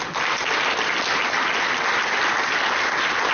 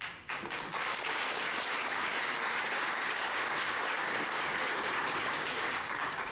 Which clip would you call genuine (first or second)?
first